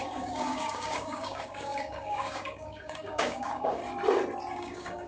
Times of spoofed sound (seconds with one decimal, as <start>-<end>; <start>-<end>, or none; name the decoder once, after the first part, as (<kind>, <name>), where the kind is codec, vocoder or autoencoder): 0.0-3.8 (codec, DAC); 4.5-5.1